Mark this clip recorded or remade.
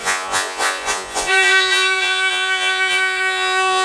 remade